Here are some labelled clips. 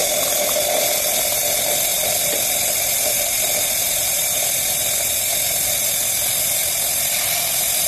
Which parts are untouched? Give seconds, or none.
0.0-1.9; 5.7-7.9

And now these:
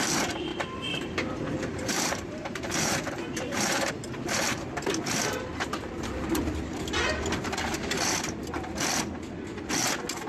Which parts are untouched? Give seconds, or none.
0.0-0.5; 3.9-10.3

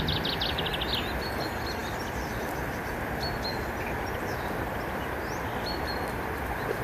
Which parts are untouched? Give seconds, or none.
0.0-6.8